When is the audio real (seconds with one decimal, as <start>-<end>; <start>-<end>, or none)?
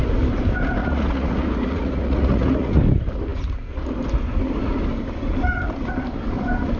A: 0.0-0.8; 2.8-6.8